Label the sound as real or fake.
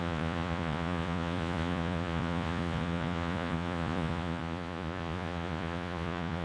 fake